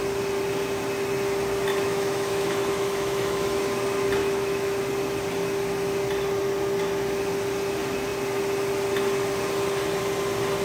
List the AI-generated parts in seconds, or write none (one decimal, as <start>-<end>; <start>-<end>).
1.7-3.6; 4.2-4.8